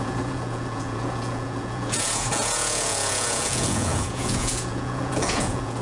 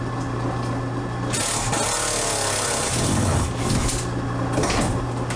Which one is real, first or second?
second